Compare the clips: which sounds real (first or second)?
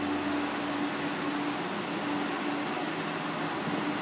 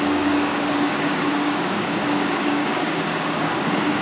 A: first